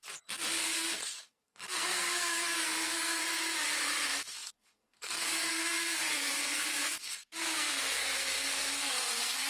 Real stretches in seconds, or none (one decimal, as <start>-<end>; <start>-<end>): 0.0-0.6; 3.2-3.9